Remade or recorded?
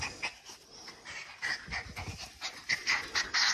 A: recorded